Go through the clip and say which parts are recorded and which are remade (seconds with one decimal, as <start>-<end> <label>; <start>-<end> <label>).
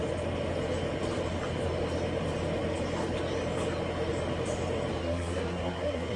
0.0-5.0 recorded; 5.0-6.2 remade